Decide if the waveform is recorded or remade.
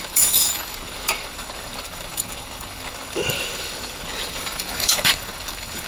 remade